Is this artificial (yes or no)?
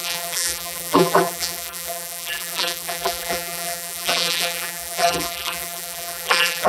yes